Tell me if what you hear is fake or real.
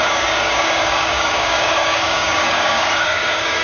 fake